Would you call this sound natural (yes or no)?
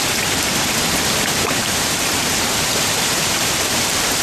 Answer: no